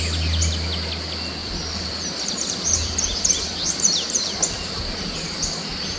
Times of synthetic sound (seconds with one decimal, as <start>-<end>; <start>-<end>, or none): 1.4-4.8